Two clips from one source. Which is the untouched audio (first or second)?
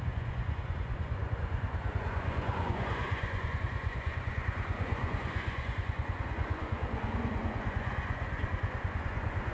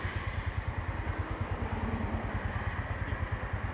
second